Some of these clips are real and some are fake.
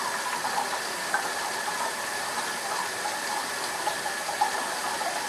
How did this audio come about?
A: real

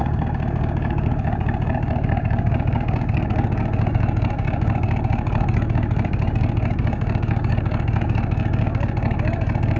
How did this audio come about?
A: fake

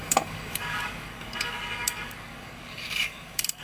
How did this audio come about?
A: fake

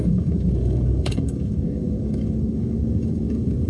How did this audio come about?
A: fake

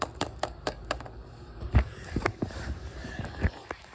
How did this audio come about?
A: fake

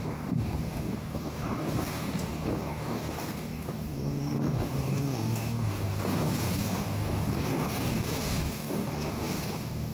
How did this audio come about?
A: fake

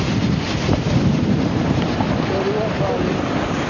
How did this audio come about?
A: real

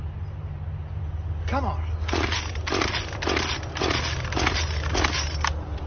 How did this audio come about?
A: real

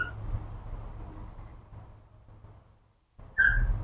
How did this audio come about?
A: real